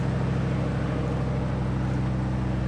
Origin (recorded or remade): recorded